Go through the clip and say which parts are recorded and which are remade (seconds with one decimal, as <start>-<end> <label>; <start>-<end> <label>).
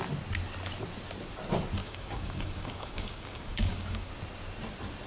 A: 0.0-1.8 recorded; 1.8-4.1 remade; 4.1-5.1 recorded